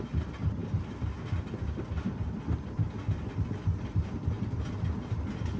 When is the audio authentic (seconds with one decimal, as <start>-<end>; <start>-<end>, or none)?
0.0-5.6